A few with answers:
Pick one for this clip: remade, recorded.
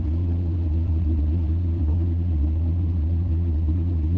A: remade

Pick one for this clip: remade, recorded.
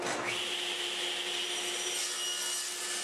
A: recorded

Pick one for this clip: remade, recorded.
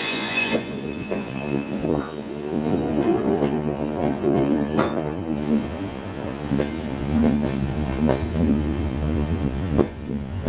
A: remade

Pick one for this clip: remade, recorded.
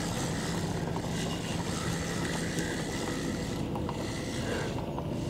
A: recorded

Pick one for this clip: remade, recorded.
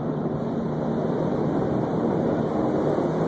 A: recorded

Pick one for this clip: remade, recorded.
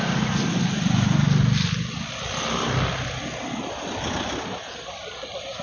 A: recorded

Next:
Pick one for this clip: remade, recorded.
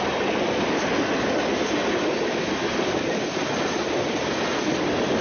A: recorded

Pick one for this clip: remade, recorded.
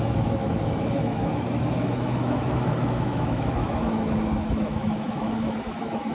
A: remade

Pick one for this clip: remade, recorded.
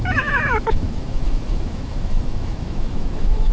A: remade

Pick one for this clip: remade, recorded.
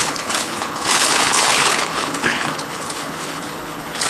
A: remade